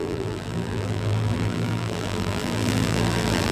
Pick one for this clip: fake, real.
fake